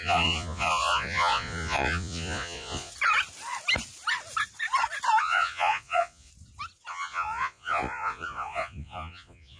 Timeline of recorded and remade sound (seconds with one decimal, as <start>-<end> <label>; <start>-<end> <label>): 0.0-2.9 remade; 2.9-5.2 recorded; 5.2-6.3 remade; 6.3-6.9 recorded; 6.9-9.6 remade